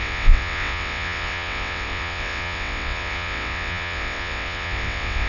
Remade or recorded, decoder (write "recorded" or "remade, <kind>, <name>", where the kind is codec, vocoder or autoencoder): remade, vocoder, WaveNeXt